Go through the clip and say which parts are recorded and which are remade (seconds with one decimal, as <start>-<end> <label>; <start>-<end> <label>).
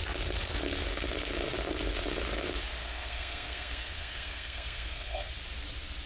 0.0-2.8 recorded; 2.8-5.3 remade; 5.3-6.1 recorded